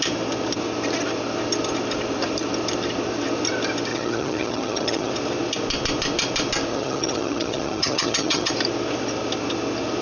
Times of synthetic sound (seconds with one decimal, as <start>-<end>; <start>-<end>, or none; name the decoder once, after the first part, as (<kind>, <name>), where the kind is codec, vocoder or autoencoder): 3.9-5.1 (vocoder, HiFi-GAN); 6.7-8.5